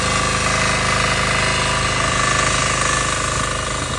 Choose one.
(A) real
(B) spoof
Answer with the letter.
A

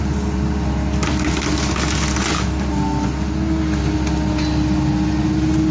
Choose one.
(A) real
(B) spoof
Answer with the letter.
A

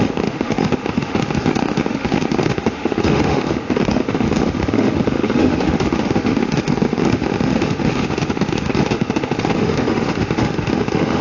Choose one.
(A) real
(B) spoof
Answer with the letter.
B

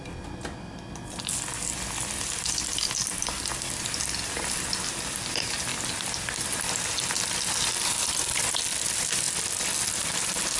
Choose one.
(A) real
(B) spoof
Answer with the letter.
A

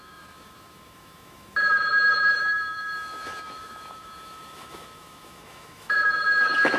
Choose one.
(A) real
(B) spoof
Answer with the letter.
B